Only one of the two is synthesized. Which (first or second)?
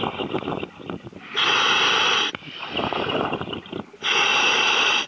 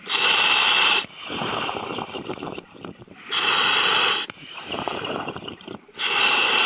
second